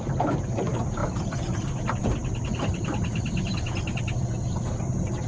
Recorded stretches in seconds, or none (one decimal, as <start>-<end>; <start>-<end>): 0.0-1.0; 4.2-5.3